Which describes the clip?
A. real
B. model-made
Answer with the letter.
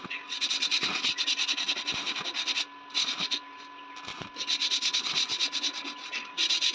A